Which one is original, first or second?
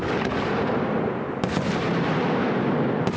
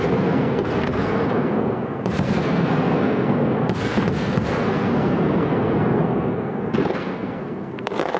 first